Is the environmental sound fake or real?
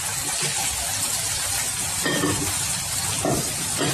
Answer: real